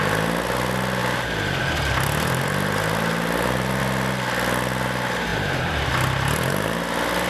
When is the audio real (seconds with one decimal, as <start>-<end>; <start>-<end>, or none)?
0.0-1.0; 3.8-5.3; 5.9-7.3